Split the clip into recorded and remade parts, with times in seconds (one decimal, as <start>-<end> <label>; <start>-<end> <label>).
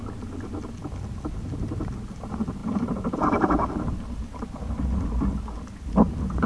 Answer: 0.0-2.6 recorded; 2.6-3.3 remade; 3.3-6.5 recorded